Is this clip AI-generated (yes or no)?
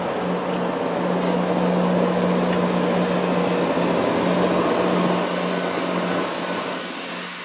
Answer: no